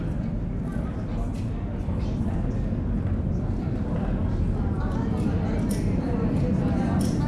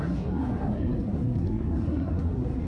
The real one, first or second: first